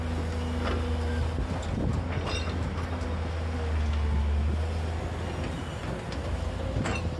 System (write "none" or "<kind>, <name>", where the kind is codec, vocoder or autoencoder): none